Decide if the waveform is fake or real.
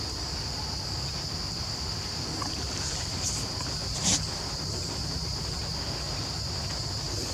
real